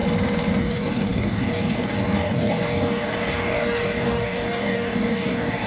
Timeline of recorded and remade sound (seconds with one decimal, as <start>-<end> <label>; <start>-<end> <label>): 0.0-0.6 recorded; 0.6-5.7 remade